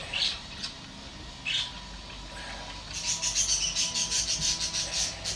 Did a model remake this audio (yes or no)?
no